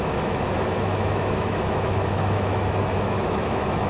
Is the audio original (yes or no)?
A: no